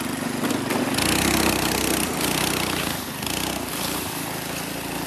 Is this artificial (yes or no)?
no